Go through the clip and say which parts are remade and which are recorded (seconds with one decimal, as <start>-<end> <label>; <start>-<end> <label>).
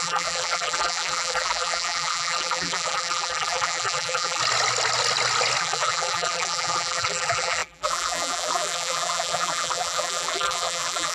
0.0-4.4 remade; 4.4-5.6 recorded; 5.6-11.1 remade